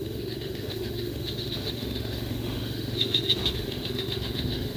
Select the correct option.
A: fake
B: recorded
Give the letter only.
A